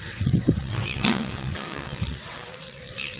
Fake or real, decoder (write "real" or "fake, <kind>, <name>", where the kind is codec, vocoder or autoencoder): fake, vocoder, WaveNeXt